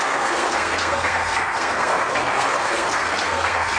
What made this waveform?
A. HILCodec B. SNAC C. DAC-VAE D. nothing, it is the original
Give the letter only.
B